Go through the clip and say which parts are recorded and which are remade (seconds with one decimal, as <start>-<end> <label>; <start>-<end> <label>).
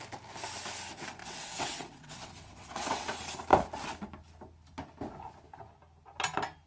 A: 0.0-1.2 recorded; 1.2-3.1 remade; 3.1-6.7 recorded